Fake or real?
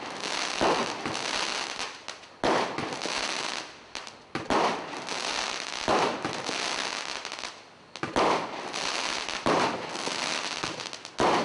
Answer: real